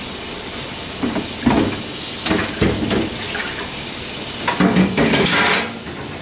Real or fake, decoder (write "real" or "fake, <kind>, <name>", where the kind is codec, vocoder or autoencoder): real